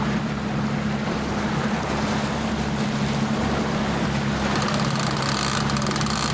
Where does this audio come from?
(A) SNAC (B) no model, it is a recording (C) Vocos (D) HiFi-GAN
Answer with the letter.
B